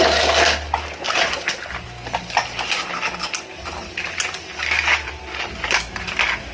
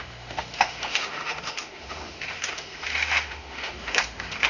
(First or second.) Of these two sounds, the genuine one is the first